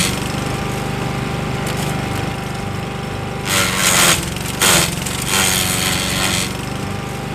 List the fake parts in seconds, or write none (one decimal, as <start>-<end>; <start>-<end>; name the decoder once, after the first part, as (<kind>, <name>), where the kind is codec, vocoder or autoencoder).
0.0-0.6 (vocoder, BigVGAN v2)